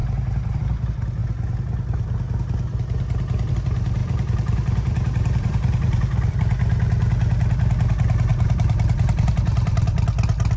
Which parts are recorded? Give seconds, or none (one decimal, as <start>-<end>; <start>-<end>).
0.6-4.0; 6.3-8.3; 10.0-10.6

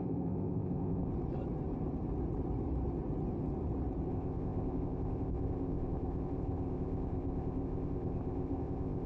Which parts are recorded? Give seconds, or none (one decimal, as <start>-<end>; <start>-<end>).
1.1-4.1